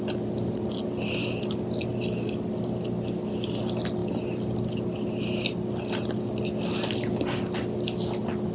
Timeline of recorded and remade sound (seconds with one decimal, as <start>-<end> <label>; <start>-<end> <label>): 0.0-8.5 recorded

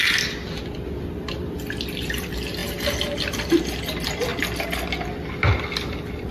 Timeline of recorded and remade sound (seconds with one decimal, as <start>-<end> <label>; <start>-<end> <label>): 0.0-6.3 recorded

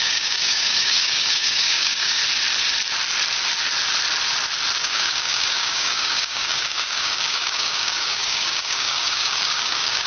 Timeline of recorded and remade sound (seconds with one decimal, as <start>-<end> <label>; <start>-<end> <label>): 0.0-2.2 remade; 2.2-4.8 recorded; 4.8-10.1 remade

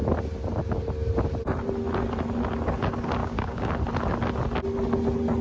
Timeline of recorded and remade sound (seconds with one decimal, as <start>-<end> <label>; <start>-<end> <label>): 0.0-3.2 recorded; 3.2-3.7 remade; 3.7-5.4 recorded

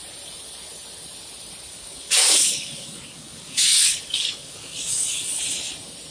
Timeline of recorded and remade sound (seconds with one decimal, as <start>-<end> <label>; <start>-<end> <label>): 0.0-1.7 recorded; 1.7-5.4 remade; 5.4-6.1 recorded

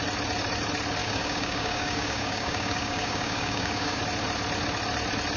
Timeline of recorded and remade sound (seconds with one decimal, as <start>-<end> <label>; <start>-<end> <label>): 0.0-1.0 recorded; 1.0-4.0 remade; 4.0-5.4 recorded

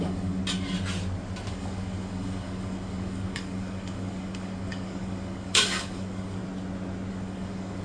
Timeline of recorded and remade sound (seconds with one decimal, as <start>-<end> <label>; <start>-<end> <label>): 0.0-0.4 remade; 0.4-1.5 recorded; 1.5-6.4 remade; 6.4-7.1 recorded; 7.1-7.8 remade

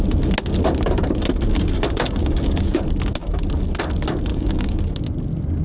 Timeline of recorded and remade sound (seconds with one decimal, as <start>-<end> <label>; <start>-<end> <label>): 0.0-2.2 recorded; 2.2-2.8 remade; 2.8-4.3 recorded; 4.3-4.8 remade; 4.8-5.6 recorded